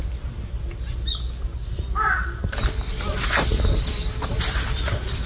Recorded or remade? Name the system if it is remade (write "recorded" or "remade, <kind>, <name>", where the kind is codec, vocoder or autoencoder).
recorded